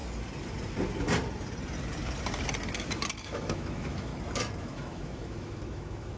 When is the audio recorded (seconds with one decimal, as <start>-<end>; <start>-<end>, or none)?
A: 0.0-3.2; 4.1-4.6

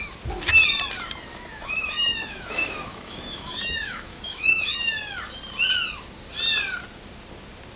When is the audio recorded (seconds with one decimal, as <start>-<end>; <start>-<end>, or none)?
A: 0.0-1.3; 4.8-7.8

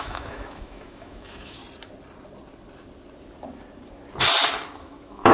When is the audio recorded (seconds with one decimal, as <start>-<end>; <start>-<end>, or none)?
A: 1.6-4.8

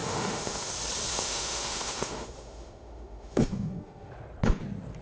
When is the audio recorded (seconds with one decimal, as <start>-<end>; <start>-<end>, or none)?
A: 0.7-1.1; 4.1-5.0